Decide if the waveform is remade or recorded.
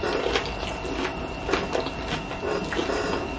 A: recorded